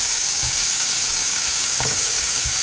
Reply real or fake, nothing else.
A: fake